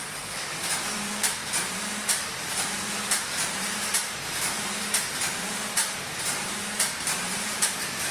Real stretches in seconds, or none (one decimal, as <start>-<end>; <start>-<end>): none